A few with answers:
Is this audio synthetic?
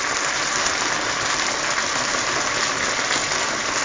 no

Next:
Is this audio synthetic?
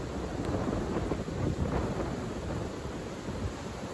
no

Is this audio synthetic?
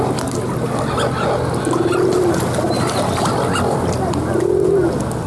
no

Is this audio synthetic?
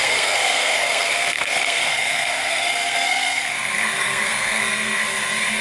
yes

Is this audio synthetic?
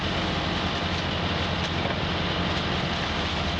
no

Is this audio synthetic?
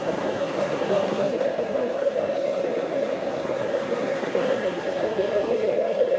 yes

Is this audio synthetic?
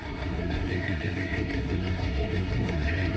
yes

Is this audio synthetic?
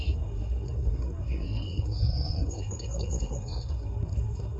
yes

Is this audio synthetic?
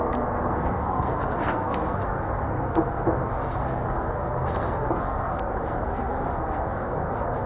yes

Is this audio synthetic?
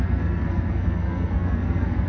yes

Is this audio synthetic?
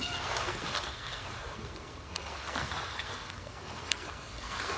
yes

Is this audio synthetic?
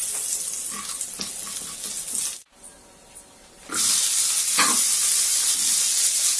no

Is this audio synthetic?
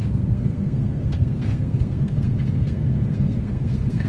yes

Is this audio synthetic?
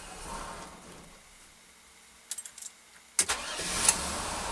no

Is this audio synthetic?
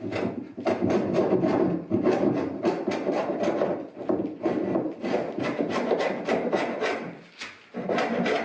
no